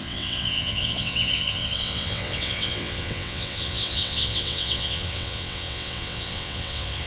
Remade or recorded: remade